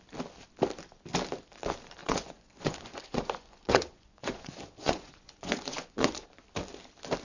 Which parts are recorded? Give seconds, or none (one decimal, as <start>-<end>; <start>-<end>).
0.0-2.0; 6.3-7.2